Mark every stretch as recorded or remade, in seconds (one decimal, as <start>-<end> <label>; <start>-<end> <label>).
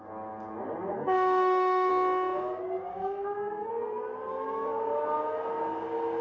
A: 0.0-0.9 recorded; 0.9-1.9 remade; 1.9-2.9 recorded; 2.9-3.7 remade; 3.7-6.2 recorded